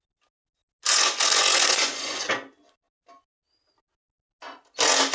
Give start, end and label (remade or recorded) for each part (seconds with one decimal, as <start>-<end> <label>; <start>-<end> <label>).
0.0-0.9 recorded; 0.9-2.3 remade; 2.3-5.1 recorded